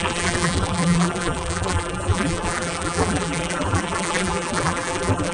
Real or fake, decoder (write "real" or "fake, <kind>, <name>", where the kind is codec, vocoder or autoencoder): fake, vocoder, BigVGAN v2